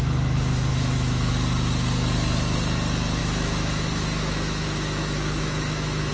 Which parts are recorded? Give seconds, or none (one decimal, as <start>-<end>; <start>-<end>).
0.0-0.7; 1.3-3.2